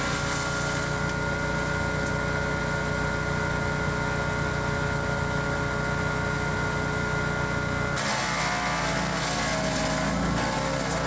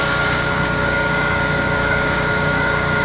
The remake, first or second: second